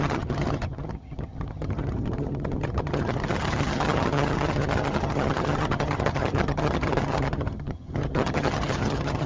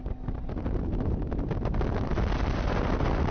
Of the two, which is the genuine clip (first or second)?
second